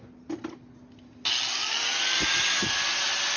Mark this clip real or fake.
real